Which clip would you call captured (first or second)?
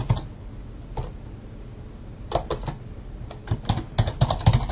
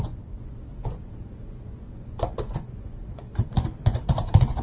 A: first